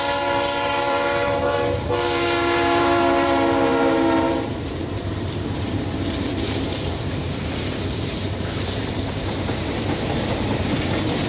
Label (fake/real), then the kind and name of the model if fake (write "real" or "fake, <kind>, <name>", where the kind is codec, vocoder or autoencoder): fake, vocoder, BigVGAN v2